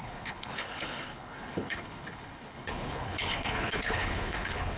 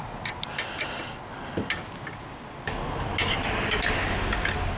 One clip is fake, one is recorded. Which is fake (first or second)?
first